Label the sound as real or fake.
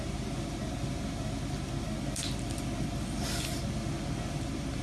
real